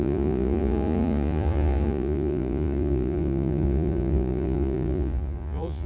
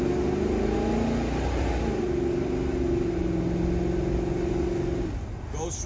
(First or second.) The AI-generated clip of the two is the first